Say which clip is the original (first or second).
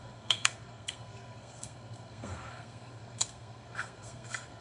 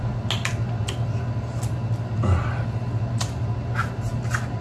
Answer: second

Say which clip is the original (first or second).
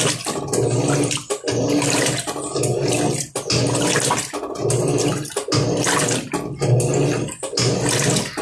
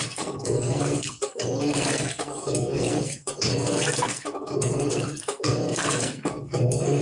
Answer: first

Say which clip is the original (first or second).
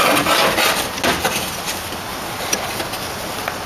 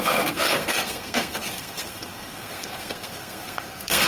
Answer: first